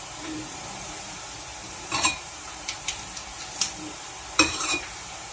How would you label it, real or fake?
fake